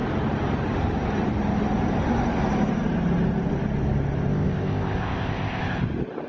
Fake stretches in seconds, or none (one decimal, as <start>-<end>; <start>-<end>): 4.3-5.8